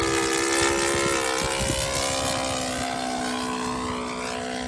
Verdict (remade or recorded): recorded